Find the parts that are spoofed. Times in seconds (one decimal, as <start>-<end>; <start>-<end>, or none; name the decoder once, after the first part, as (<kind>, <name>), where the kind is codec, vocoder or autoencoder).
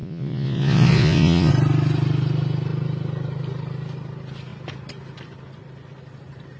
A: 0.0-1.5 (vocoder, Vocos)